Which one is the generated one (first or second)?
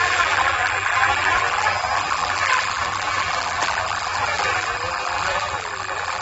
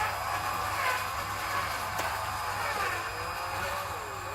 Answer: first